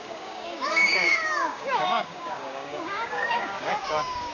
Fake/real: fake